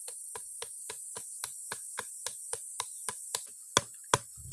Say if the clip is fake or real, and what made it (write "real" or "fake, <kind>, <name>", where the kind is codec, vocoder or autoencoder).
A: real